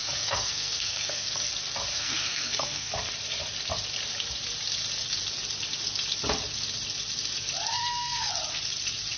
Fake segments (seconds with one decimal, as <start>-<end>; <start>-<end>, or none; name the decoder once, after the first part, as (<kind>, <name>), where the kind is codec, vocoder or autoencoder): 0.0-1.5 (codec, SNAC); 1.9-2.9; 7.7-8.3